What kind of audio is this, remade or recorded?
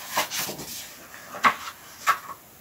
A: recorded